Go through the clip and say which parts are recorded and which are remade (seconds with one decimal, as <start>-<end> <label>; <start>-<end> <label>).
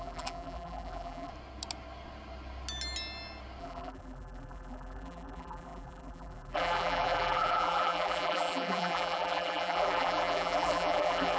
0.0-1.3 remade; 1.3-3.6 recorded; 3.6-11.4 remade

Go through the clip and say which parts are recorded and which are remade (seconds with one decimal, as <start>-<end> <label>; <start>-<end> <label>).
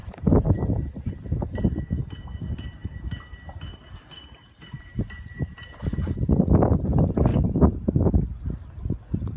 0.0-1.1 remade; 1.1-2.8 recorded; 2.8-4.8 remade; 4.8-7.3 recorded; 7.3-8.0 remade; 8.0-9.4 recorded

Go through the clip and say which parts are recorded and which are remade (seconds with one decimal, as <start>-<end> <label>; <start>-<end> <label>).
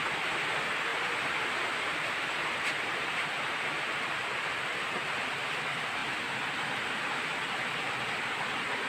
0.0-0.9 recorded; 0.9-4.6 remade; 4.6-8.9 recorded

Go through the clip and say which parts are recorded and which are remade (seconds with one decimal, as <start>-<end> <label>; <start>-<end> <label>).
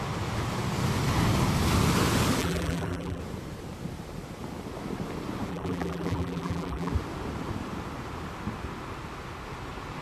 0.0-2.4 recorded; 2.4-3.2 remade; 3.2-5.5 recorded; 5.5-6.9 remade; 6.9-10.0 recorded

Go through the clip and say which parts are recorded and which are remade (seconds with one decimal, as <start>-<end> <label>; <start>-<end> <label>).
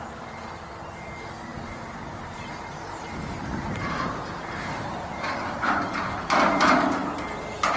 0.0-1.5 recorded; 1.5-6.2 remade; 6.2-7.8 recorded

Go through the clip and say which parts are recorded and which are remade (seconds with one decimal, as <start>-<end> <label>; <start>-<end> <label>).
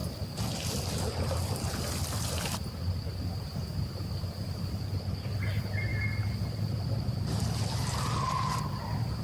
0.0-4.8 remade; 4.8-9.2 recorded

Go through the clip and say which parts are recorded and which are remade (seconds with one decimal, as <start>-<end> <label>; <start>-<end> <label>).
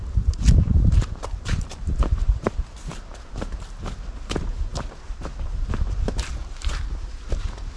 0.0-6.4 remade; 6.4-7.1 recorded; 7.1-7.8 remade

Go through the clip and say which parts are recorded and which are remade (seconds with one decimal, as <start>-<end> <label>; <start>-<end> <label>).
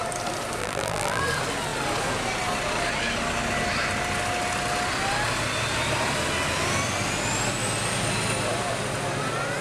0.0-0.6 recorded; 0.6-1.2 remade; 1.2-9.6 recorded